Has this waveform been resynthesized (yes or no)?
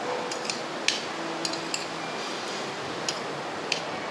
no